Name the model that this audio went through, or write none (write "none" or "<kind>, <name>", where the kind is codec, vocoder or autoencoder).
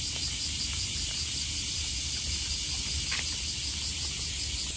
none